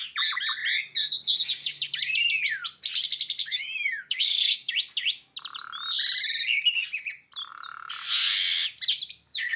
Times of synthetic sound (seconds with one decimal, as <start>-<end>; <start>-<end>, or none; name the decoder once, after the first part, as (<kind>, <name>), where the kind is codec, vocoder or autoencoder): 3.4-4.7 (codec, DAC)